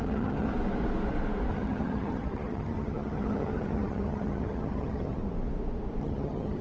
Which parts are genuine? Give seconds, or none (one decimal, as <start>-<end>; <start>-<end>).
0.5-1.5; 5.2-6.0